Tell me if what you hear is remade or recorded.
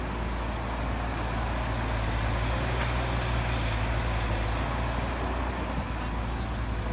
recorded